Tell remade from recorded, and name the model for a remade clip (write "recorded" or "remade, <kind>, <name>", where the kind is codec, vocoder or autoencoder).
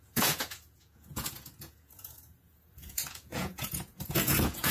remade, vocoder, Vocos